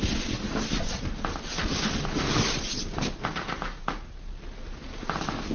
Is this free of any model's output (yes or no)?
yes